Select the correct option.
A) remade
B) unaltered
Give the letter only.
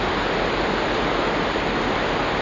B